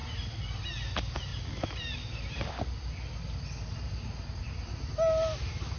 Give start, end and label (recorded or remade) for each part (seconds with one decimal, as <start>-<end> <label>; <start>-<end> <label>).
0.0-5.8 recorded